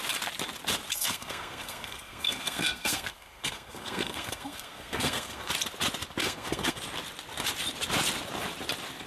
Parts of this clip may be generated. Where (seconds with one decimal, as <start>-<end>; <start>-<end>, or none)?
0.9-5.5; 6.2-6.8